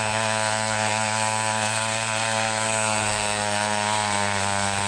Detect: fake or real fake